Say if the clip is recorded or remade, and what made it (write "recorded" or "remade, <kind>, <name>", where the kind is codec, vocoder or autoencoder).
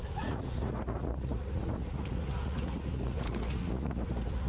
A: remade, vocoder, Vocos